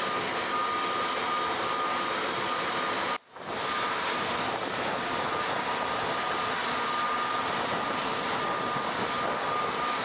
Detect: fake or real real